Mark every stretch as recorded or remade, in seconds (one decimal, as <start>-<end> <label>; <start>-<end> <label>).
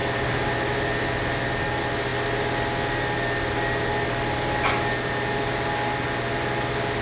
0.0-7.0 recorded